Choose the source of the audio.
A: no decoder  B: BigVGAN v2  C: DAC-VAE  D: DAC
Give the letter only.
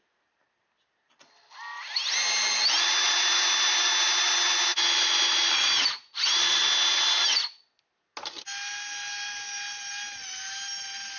A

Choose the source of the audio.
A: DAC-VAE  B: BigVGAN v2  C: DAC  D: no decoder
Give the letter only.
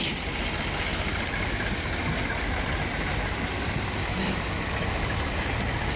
D